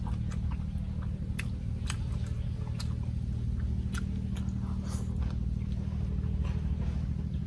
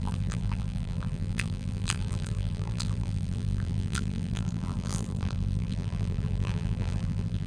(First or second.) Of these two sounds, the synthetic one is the second